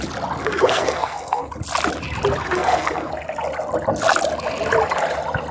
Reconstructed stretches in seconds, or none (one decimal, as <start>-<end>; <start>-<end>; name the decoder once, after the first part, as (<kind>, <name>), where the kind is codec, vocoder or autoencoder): 0.4-1.5 (codec, SNAC); 2.4-3.1